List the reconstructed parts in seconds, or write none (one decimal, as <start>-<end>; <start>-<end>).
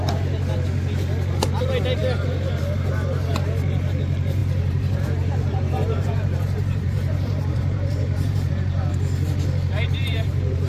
4.4-8.5; 10.0-10.7